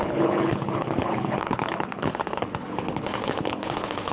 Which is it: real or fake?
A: fake